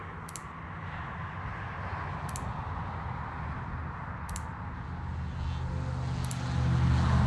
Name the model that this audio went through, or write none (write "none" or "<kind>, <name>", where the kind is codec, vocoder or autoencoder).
none